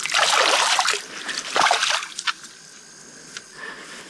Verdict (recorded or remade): recorded